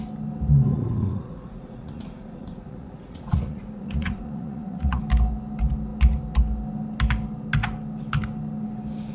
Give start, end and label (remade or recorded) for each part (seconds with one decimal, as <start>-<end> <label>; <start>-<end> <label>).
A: 0.0-0.7 recorded; 0.7-5.0 remade; 5.0-9.1 recorded